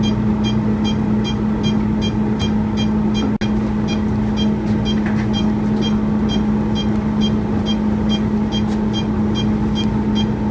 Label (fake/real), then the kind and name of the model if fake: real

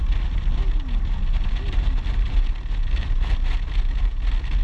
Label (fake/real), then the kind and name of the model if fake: real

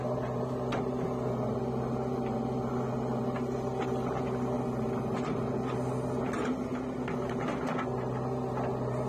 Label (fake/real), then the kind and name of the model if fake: real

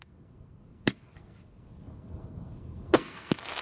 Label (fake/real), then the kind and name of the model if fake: fake, codec, SNAC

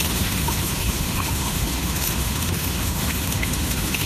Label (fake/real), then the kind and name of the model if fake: fake, autoencoder, DAC-VAE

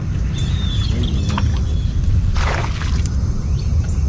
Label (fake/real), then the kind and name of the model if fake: real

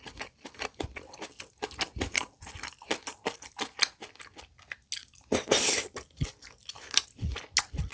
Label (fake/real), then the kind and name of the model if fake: real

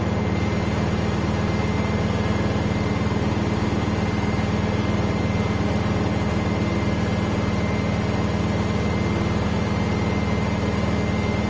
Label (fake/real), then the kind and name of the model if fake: real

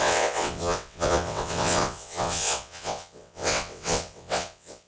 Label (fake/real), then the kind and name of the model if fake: fake, vocoder, WaveNeXt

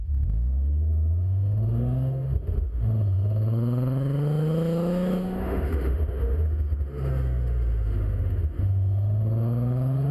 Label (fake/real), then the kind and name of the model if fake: fake, autoencoder, DAC-VAE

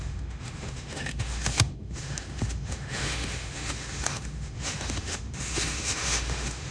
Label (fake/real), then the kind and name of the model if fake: fake, autoencoder, DAC-VAE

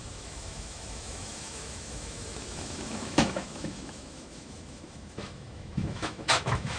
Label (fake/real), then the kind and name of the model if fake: fake, autoencoder, DAC-VAE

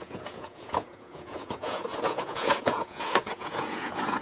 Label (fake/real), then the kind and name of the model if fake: fake, vocoder, Vocos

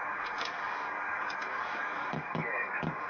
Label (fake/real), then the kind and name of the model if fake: fake, codec, DAC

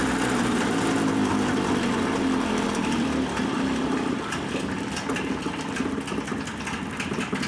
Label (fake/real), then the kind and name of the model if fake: real